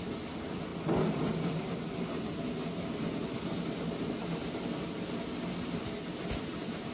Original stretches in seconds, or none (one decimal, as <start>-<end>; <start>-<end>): 0.0-6.9

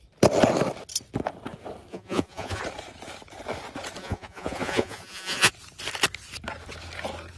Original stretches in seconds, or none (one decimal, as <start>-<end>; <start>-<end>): 0.0-1.9; 2.6-4.0; 5.5-7.4

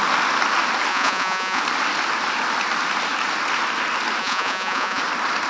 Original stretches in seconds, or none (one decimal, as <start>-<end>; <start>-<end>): 0.0-0.9; 1.6-4.2; 5.0-5.5

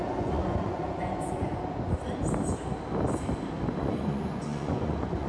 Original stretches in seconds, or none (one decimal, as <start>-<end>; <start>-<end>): 1.5-3.8

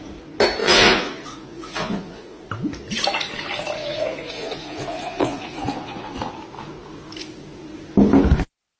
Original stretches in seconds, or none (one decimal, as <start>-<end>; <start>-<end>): 0.0-0.6; 2.4-3.8; 6.3-8.8

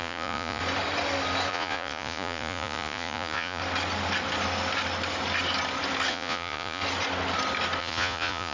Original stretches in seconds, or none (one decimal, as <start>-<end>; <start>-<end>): 0.6-1.5; 3.6-6.1; 6.8-7.8